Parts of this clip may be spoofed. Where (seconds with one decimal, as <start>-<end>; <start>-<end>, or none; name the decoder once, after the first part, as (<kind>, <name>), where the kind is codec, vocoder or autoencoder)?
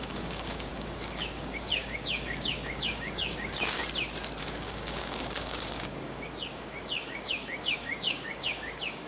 0.0-3.8 (codec, DAC); 4.4-9.1